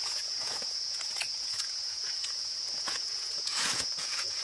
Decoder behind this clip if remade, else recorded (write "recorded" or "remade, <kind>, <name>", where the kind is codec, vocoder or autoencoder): remade, vocoder, Vocos